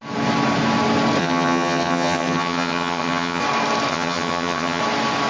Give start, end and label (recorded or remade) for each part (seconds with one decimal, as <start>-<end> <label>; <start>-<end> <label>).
0.0-1.2 recorded; 1.2-3.4 remade; 3.4-3.9 recorded; 3.9-4.8 remade; 4.8-5.3 recorded

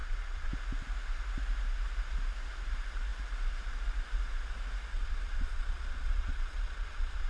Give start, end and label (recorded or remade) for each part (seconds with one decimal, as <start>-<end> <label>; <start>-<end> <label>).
0.0-0.5 remade; 0.5-4.9 recorded; 4.9-7.3 remade

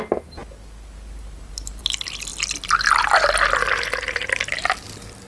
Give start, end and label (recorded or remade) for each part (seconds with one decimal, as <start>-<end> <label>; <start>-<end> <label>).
0.0-5.3 recorded

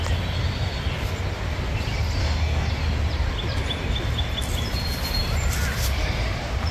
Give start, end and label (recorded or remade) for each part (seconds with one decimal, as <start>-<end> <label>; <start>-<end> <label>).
0.0-2.2 recorded; 2.2-2.7 remade; 2.7-6.7 recorded